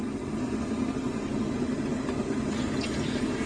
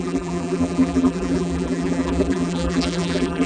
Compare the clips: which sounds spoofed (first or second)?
second